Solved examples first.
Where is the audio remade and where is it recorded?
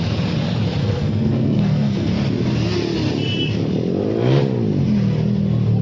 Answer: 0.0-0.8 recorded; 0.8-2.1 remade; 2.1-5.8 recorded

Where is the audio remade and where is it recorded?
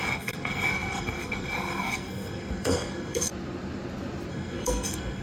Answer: 0.0-3.3 remade; 3.3-4.3 recorded; 4.3-5.2 remade